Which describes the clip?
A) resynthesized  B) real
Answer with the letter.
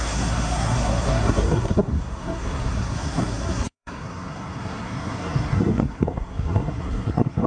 A